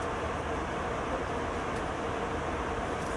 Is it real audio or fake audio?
real